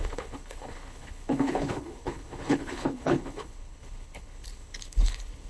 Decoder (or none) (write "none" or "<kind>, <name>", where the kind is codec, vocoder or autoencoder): codec, HILCodec